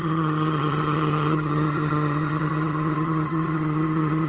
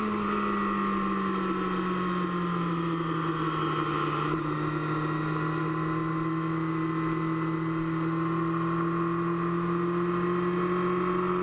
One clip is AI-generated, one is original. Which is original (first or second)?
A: second